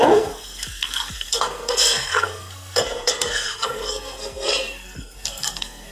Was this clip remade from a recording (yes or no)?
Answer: yes